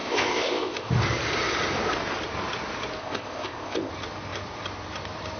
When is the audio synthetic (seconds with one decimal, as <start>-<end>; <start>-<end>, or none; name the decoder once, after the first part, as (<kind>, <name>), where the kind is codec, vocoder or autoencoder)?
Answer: 0.0-0.9 (codec, ZipCodec); 3.0-3.9